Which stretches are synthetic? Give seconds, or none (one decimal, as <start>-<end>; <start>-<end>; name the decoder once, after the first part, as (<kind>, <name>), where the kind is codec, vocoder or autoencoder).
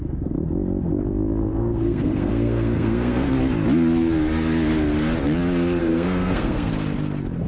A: 1.5-3.3 (codec, SNAC); 5.8-6.7